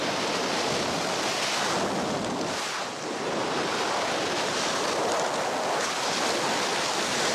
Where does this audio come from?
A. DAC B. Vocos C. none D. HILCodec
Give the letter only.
C